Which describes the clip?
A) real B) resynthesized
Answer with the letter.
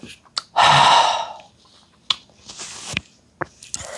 A